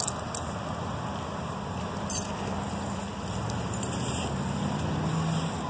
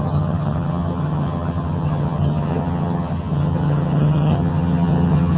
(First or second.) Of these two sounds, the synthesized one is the second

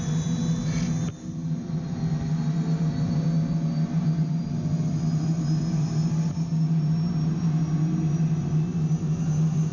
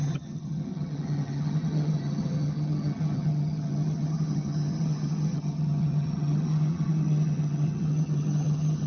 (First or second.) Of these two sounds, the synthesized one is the second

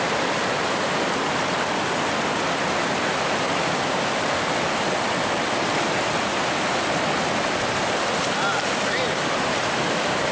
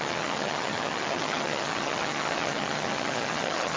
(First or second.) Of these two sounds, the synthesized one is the second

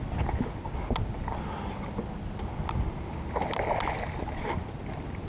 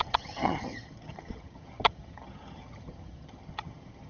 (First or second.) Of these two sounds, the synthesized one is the second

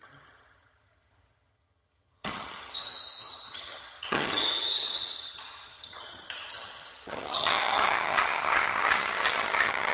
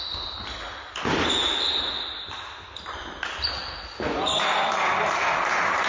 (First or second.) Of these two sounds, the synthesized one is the first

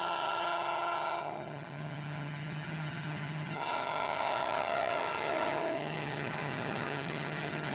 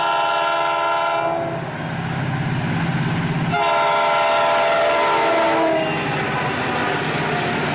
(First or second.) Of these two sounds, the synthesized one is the first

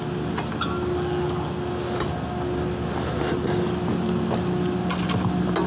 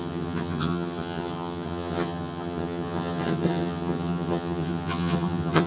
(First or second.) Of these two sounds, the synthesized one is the second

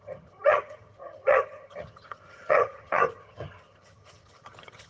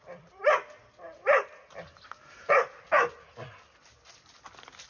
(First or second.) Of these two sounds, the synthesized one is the first